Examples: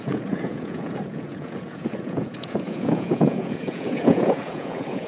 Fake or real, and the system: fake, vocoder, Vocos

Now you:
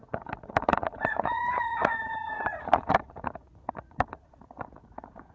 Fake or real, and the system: fake, vocoder, Vocos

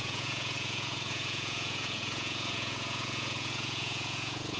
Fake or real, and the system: fake, vocoder, Vocos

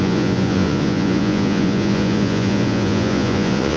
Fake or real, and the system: fake, vocoder, Vocos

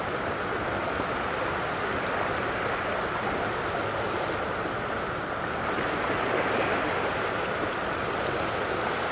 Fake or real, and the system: real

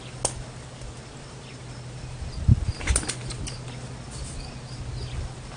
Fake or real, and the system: real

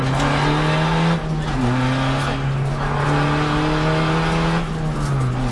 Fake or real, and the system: real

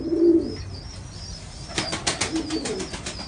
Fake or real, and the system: real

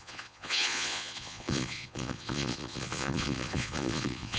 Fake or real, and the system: fake, vocoder, Vocos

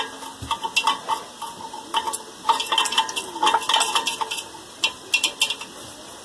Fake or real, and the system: real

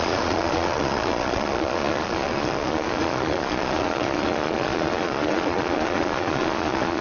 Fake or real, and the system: fake, vocoder, Vocos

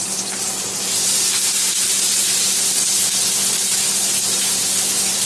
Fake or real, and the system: real